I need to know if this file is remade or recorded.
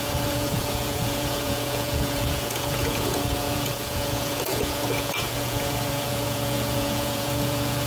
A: remade